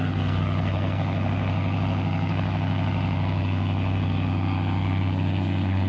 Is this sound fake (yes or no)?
yes